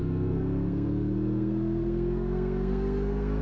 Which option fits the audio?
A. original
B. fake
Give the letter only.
B